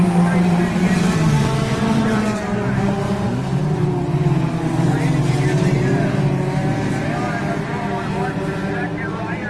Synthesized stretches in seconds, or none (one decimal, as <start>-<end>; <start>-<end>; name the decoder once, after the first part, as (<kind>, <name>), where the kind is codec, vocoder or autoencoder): 0.0-9.5 (vocoder, BigVGAN v2)